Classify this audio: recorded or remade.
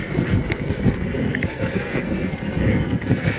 remade